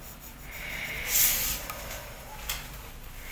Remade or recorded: recorded